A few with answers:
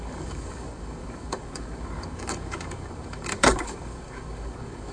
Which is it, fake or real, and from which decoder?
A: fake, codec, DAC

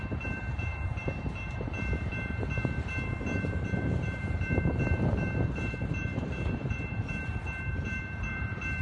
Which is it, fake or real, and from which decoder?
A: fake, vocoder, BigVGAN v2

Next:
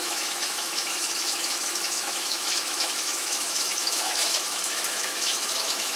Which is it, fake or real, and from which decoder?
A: fake, autoencoder, DAC-VAE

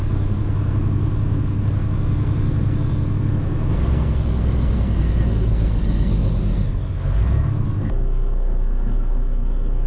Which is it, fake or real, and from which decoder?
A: fake, codec, SNAC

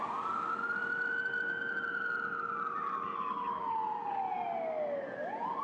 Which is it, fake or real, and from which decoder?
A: real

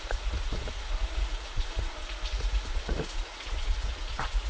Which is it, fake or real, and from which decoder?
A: fake, vocoder, Vocos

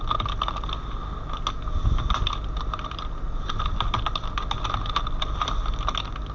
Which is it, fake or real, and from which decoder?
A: real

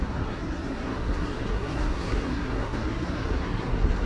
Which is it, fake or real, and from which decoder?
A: fake, codec, SNAC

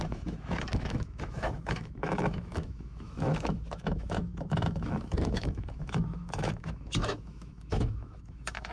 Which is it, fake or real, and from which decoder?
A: fake, autoencoder, DAC-VAE